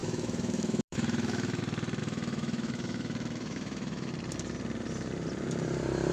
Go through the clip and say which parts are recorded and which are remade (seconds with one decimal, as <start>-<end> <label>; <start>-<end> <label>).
0.0-1.6 remade; 1.6-2.0 recorded; 2.0-4.1 remade; 4.1-6.1 recorded